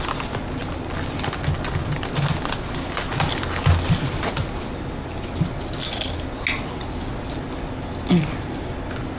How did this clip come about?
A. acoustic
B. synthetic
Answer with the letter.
A